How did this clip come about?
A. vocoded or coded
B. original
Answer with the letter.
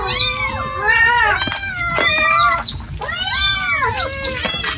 B